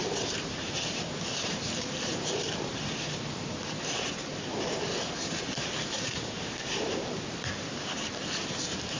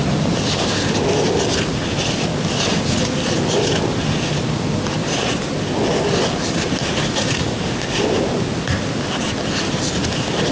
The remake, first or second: first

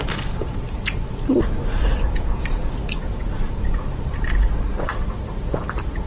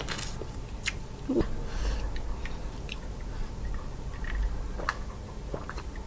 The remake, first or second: first